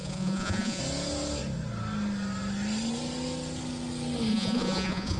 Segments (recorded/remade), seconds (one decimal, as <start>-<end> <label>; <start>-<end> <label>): 0.0-0.8 remade; 0.8-4.3 recorded; 4.3-5.2 remade

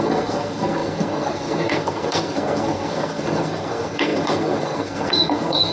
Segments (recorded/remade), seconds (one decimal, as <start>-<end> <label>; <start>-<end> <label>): 0.0-5.7 remade

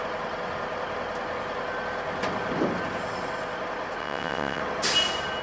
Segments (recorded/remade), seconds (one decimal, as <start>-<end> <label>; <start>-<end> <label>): 0.0-4.0 recorded; 4.0-4.6 remade; 4.6-5.4 recorded

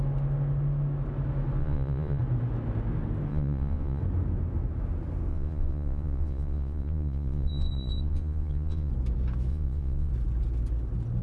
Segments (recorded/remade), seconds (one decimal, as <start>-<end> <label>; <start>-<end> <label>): 0.0-1.6 recorded; 1.6-2.2 remade; 2.2-3.3 recorded; 3.3-4.0 remade; 4.0-5.3 recorded; 5.3-8.9 remade; 8.9-9.5 recorded; 9.5-10.1 remade; 10.1-11.2 recorded

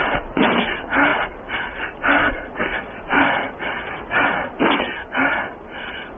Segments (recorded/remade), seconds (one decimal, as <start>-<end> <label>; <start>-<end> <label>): 0.0-6.2 recorded

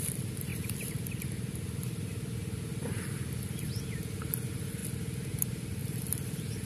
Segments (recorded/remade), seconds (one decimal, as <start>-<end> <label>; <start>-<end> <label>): 0.0-0.5 recorded; 0.5-3.7 remade; 3.7-5.8 recorded; 5.8-6.7 remade

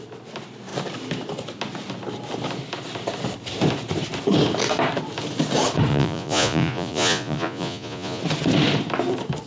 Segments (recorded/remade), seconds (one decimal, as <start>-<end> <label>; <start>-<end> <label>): 0.0-5.9 recorded; 5.9-8.2 remade; 8.2-9.5 recorded